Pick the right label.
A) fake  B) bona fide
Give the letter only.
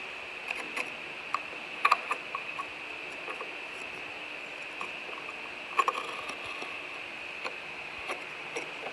B